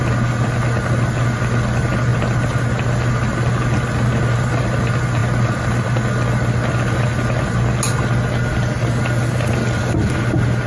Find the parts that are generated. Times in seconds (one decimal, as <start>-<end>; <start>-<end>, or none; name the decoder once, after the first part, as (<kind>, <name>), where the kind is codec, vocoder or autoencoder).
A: none